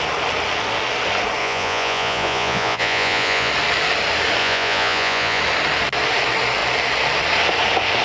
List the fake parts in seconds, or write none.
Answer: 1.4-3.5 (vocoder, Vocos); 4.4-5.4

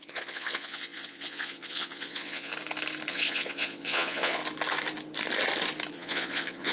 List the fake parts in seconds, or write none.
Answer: 0.0-2.5 (vocoder, Vocos); 3.1-4.4; 5.9-6.7

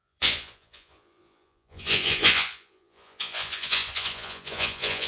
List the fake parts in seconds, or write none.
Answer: 0.0-5.1 (vocoder, Vocos)

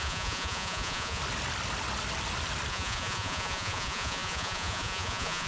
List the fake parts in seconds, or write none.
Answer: 0.0-1.2 (vocoder, Vocos); 2.7-5.5

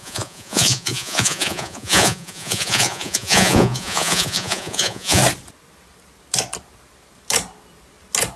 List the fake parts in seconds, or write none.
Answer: 0.0-5.2 (vocoder, Vocos)